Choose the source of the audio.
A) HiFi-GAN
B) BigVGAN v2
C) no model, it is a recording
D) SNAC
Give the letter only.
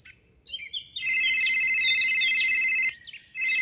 C